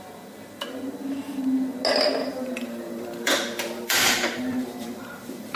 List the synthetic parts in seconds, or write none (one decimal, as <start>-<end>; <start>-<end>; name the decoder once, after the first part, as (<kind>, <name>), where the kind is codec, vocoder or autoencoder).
2.2-5.6 (vocoder, BigVGAN v2)